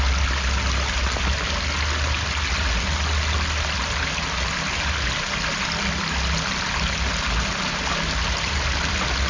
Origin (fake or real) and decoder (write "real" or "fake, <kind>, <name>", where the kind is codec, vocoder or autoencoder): real